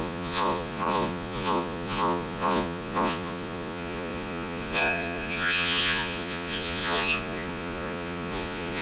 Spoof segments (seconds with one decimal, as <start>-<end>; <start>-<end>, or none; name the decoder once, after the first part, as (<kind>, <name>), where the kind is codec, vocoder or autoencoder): 0.0-8.8 (vocoder, Vocos)